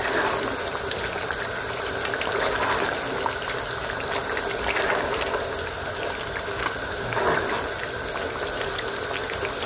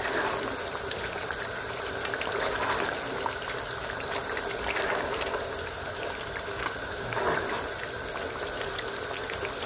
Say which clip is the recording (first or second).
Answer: first